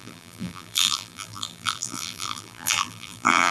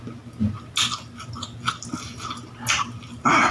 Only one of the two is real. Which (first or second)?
second